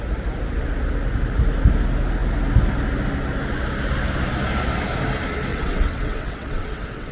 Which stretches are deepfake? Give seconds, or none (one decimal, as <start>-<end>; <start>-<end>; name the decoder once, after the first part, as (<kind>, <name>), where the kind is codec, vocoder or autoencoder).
5.5-7.1 (vocoder, WaveNeXt)